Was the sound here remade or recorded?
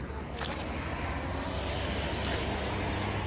recorded